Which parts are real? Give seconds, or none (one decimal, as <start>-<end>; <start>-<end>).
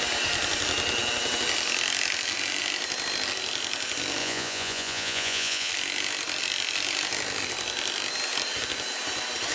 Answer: 0.0-4.2; 5.7-9.5